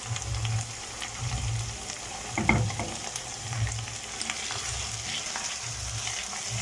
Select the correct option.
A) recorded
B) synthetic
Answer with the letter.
A